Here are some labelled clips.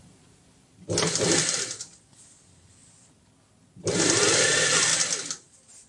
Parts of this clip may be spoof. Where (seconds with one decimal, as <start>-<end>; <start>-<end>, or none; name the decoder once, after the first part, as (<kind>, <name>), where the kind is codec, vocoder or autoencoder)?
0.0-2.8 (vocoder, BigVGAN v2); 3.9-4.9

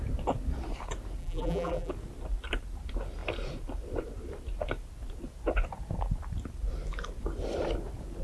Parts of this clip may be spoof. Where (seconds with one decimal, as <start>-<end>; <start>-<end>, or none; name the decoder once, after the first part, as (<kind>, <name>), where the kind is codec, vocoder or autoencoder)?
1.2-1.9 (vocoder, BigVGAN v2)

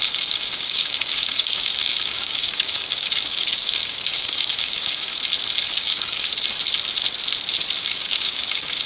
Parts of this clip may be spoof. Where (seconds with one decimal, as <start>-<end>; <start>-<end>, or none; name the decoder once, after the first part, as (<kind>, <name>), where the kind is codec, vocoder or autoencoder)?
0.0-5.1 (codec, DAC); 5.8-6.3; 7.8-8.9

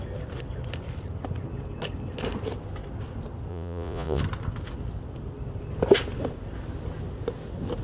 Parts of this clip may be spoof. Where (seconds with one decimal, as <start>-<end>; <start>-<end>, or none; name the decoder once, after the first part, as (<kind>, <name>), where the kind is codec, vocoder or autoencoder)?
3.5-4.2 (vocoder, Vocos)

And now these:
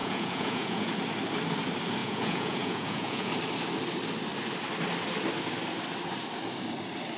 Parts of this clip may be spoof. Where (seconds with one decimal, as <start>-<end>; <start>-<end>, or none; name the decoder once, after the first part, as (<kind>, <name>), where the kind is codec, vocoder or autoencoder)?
0.0-0.9 (vocoder, Vocos); 2.0-3.3

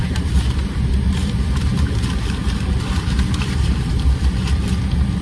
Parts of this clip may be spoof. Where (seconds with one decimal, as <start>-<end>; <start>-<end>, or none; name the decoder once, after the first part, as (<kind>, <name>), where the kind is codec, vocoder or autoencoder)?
0.0-5.2 (vocoder, BigVGAN v2)

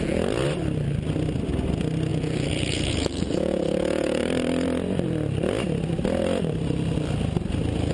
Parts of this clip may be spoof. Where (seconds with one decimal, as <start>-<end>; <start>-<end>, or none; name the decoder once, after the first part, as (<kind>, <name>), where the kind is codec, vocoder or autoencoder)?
2.1-4.2 (vocoder, Vocos)

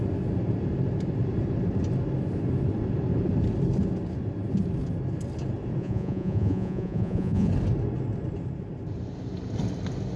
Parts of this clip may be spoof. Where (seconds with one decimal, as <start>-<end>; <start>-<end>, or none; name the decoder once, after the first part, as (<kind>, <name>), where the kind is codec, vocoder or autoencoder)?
5.8-7.5 (vocoder, Vocos)